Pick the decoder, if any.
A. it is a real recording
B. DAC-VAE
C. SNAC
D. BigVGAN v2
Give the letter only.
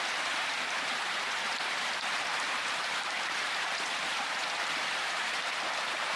D